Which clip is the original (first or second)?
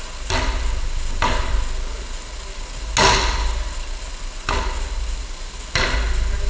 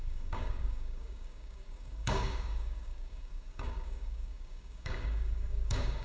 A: first